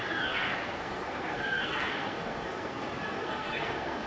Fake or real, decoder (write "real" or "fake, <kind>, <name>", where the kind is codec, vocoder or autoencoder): fake, codec, SNAC